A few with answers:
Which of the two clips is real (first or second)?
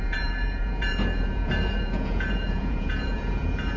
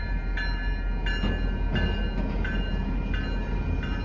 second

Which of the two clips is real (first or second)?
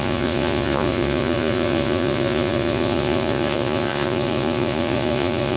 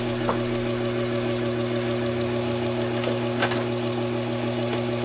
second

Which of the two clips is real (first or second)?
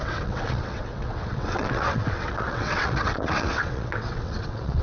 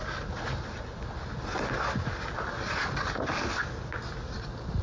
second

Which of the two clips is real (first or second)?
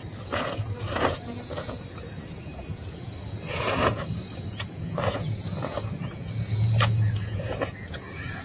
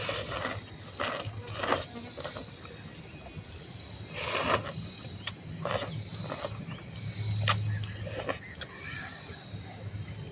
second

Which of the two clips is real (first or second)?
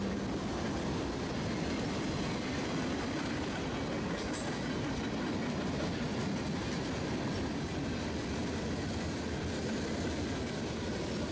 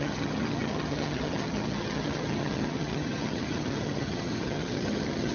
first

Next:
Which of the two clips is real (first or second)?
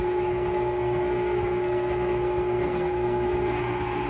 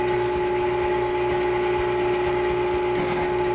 second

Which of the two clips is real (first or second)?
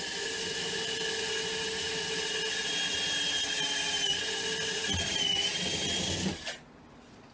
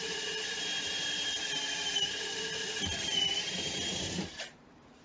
first